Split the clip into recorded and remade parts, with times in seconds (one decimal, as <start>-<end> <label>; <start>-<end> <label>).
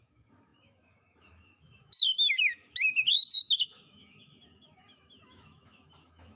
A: 0.0-6.4 remade